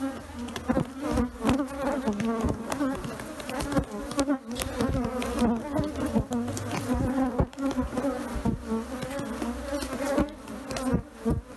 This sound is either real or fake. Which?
real